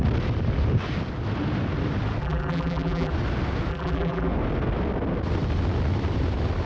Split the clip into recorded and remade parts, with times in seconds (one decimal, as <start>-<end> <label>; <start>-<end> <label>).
0.0-2.2 recorded; 2.2-3.1 remade; 3.1-3.7 recorded; 3.7-4.3 remade; 4.3-6.7 recorded

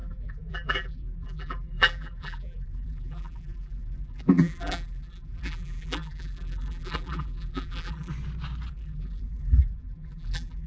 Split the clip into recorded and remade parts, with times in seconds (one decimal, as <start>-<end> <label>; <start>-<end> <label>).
0.0-8.1 remade; 8.1-8.7 recorded; 8.7-10.7 remade

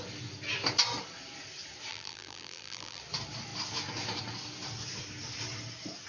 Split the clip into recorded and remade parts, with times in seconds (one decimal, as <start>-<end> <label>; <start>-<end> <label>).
0.0-1.9 recorded; 1.9-3.0 remade; 3.0-6.1 recorded

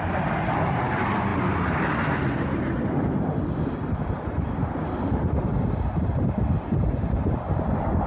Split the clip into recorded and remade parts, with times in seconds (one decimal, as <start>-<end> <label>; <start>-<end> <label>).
0.0-1.3 recorded; 1.3-1.9 remade; 1.9-8.1 recorded

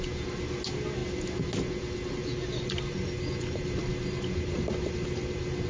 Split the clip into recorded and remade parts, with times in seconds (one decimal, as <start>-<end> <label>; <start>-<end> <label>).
0.0-5.7 recorded

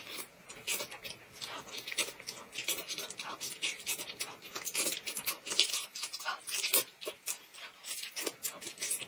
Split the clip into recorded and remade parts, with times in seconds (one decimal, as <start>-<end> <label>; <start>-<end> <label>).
0.0-9.1 recorded

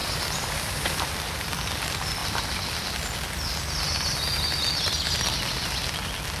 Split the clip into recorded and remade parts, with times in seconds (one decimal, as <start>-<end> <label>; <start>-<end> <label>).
0.0-1.5 remade; 1.5-6.4 recorded

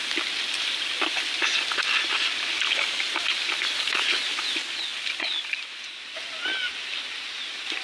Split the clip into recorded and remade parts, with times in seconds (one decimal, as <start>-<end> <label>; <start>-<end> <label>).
0.0-7.8 recorded